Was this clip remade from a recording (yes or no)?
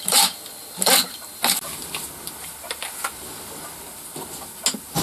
no